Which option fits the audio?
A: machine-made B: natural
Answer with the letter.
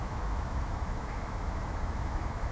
A